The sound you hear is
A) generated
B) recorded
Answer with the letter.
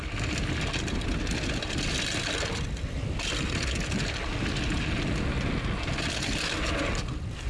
B